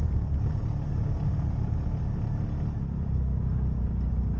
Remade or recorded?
recorded